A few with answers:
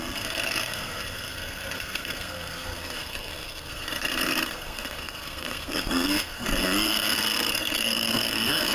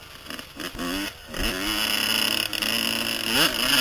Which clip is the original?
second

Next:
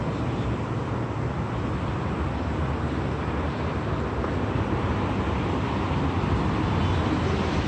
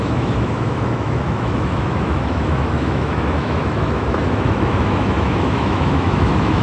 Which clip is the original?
first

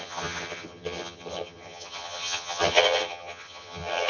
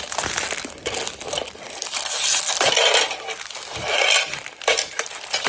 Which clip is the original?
second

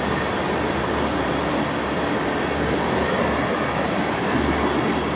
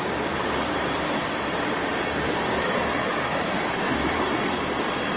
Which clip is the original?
first